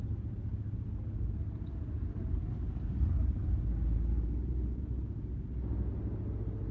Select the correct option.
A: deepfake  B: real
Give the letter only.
B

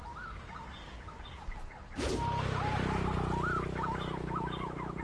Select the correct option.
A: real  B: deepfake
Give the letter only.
A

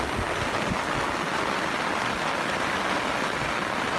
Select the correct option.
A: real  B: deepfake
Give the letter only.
A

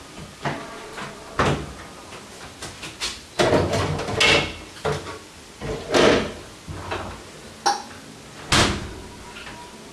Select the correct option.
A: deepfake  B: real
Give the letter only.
B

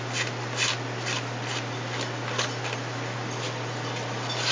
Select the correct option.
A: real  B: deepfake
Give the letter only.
A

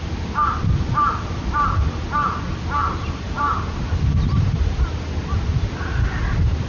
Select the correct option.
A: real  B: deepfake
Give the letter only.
A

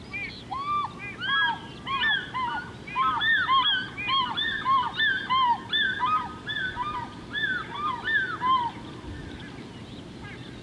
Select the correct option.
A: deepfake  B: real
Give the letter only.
B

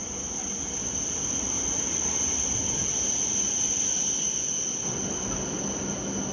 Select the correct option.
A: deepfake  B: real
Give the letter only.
B